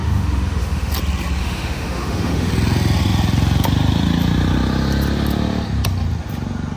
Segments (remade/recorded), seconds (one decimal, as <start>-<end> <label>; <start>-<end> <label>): 0.0-0.9 remade; 0.9-1.4 recorded; 1.4-2.5 remade; 2.5-6.8 recorded